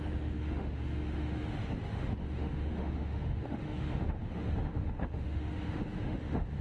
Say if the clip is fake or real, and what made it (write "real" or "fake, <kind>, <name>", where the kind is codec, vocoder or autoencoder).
fake, autoencoder, DAC-VAE